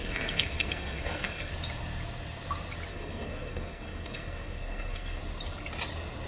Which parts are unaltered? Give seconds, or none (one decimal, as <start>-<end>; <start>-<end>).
1.5-2.9; 5.2-6.3